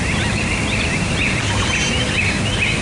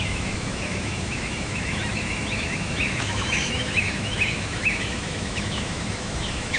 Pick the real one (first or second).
first